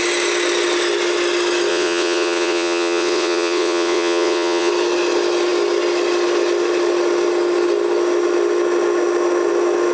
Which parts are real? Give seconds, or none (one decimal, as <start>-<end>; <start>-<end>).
0.0-1.7; 4.7-9.9